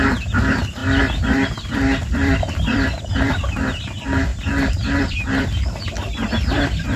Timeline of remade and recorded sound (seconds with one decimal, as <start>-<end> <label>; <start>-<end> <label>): 0.0-0.8 recorded; 0.8-3.4 remade; 3.4-4.3 recorded; 4.3-7.0 remade